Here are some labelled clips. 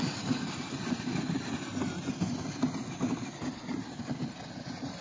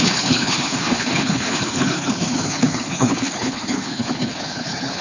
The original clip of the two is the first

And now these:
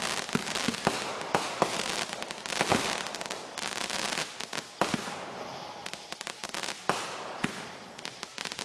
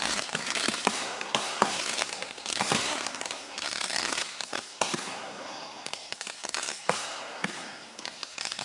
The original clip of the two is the first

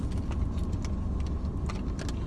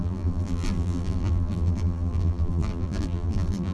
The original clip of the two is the first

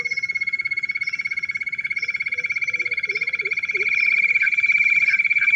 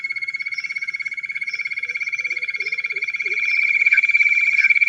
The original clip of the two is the first